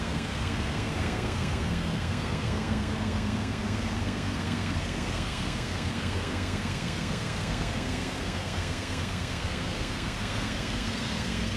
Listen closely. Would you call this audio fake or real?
fake